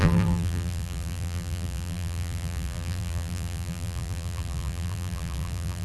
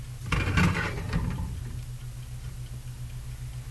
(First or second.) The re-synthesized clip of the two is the first